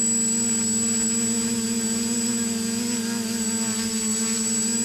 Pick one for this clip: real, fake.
real